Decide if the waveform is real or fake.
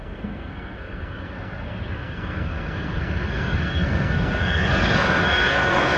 fake